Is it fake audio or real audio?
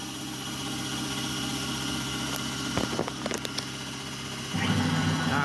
real